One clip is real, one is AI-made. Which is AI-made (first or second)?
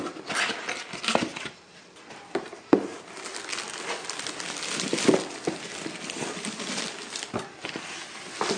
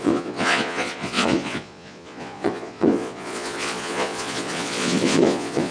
second